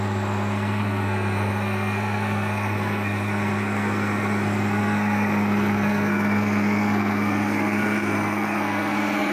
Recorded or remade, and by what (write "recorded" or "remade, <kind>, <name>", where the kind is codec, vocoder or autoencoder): remade, codec, SNAC